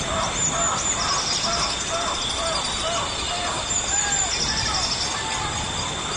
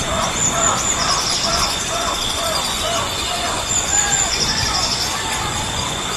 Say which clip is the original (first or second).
first